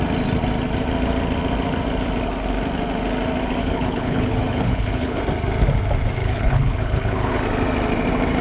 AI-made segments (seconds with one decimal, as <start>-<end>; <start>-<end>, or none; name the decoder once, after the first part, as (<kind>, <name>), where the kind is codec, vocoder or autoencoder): 3.6-5.2 (codec, HILCodec); 6.2-7.4